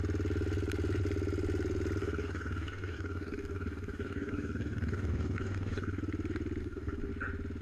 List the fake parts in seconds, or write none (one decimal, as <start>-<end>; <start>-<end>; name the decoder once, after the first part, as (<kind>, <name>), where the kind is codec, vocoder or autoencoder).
2.0-6.0 (codec, DAC); 6.6-7.1